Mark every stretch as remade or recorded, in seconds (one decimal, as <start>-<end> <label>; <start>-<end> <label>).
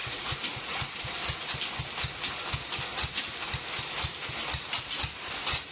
0.0-1.0 remade; 1.0-5.7 recorded